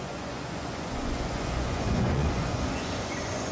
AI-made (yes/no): yes